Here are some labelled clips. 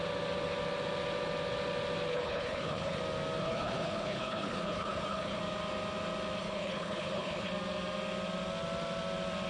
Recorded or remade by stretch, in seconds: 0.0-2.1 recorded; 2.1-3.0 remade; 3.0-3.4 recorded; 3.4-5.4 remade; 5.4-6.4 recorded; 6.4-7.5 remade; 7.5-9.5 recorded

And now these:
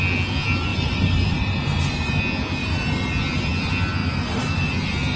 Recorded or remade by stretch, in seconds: 0.0-0.7 recorded; 0.7-2.2 remade; 2.2-2.6 recorded; 2.6-3.1 remade; 3.1-4.0 recorded; 4.0-4.6 remade; 4.6-5.2 recorded